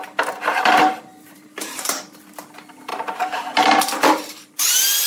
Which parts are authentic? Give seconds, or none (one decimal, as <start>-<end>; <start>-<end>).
0.0-1.1; 2.2-2.9; 4.4-5.1